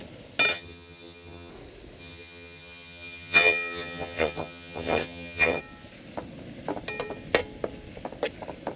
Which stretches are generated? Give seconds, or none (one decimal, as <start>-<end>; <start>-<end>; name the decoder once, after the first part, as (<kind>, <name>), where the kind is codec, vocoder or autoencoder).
0.5-1.5 (vocoder, HiFi-GAN); 2.0-5.6